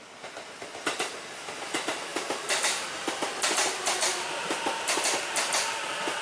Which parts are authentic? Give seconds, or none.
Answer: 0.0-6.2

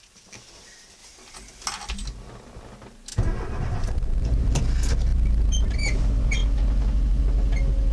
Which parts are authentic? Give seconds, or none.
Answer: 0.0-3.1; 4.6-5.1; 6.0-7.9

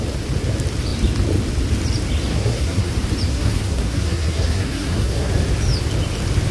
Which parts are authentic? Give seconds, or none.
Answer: 0.0-2.3; 2.9-3.3; 5.3-6.5

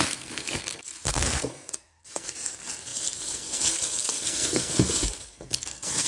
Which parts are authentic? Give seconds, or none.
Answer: none

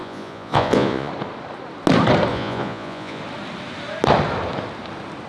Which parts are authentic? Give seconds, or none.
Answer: 1.1-2.3; 3.2-5.3

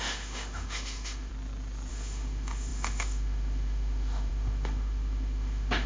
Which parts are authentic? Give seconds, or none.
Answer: 1.3-1.9

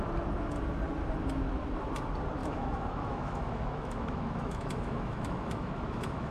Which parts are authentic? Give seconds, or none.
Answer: 0.0-2.4